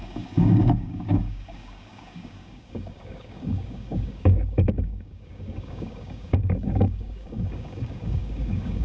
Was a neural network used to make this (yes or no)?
yes